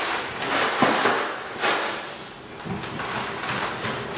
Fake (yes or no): no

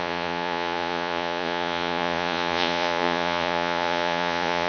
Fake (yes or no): yes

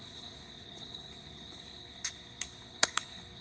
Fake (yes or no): yes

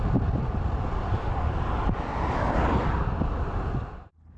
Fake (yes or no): no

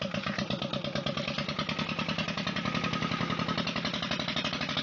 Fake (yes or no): no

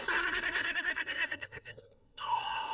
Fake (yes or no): yes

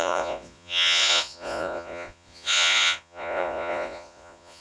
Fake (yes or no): yes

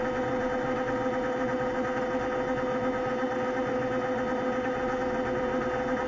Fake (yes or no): no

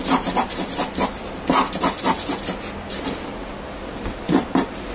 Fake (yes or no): no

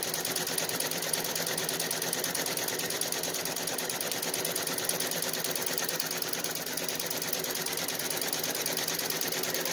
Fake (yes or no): no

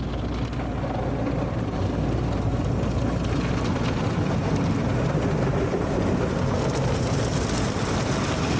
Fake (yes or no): no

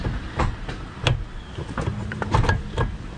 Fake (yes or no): yes